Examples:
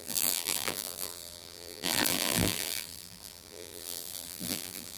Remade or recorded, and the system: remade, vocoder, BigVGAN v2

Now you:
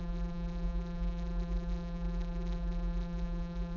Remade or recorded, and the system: remade, vocoder, BigVGAN v2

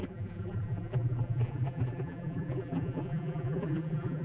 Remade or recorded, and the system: remade, vocoder, BigVGAN v2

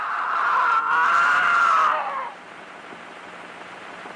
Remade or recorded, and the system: remade, vocoder, BigVGAN v2